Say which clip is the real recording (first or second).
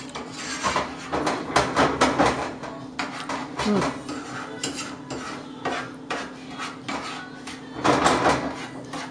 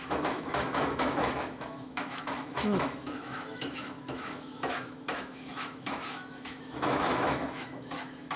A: first